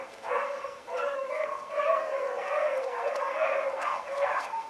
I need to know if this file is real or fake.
fake